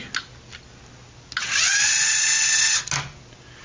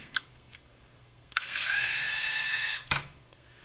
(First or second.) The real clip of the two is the first